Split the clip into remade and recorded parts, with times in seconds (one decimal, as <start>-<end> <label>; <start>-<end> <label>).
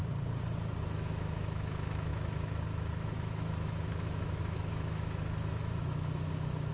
0.0-0.8 recorded; 0.8-6.7 remade